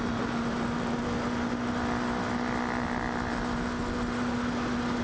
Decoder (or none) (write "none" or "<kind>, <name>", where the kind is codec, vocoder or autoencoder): none